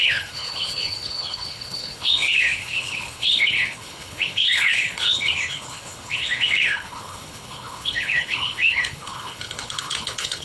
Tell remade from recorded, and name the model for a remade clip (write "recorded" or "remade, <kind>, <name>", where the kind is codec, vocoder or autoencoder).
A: remade, codec, HILCodec